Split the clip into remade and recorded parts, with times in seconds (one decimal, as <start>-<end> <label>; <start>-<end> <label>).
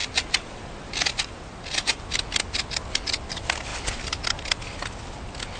0.0-5.6 recorded